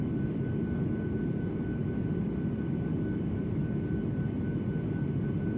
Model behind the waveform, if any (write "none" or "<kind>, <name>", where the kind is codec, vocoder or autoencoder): none